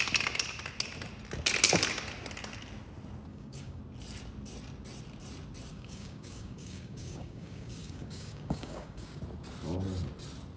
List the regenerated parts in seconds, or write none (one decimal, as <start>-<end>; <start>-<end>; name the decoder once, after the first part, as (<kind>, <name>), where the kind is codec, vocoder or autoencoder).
3.3-3.8 (codec, DAC); 5.7-9.2